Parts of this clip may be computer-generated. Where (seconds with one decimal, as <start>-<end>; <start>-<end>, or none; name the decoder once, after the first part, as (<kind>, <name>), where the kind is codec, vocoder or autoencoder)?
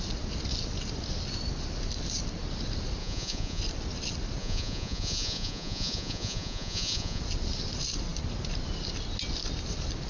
3.0-3.6 (vocoder, Vocos); 4.4-7.2